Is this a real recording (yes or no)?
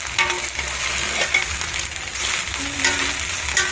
yes